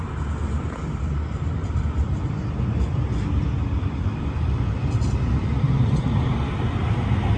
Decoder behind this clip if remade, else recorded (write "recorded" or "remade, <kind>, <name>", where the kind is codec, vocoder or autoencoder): remade, vocoder, BigVGAN v2